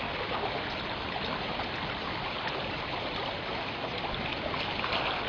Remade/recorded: recorded